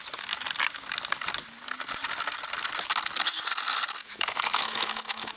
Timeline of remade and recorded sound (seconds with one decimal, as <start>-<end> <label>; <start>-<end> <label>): 0.0-4.0 recorded; 4.0-5.4 remade